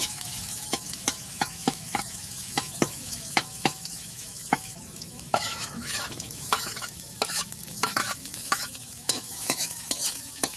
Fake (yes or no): yes